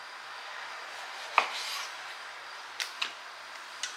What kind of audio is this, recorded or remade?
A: recorded